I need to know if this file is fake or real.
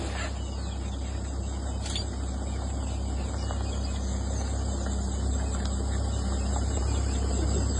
real